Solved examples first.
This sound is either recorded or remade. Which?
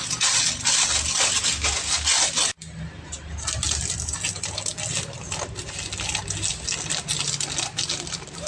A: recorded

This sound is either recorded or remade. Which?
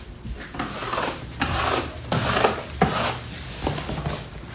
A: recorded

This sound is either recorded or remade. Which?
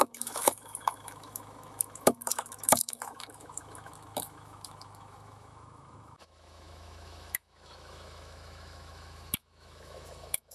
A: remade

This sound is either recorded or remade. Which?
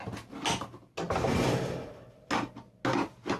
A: recorded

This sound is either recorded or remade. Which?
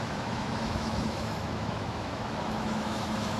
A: remade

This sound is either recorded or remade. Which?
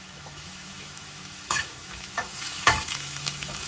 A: remade